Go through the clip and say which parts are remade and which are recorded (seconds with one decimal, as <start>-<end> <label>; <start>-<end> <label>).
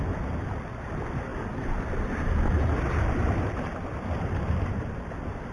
0.0-5.5 recorded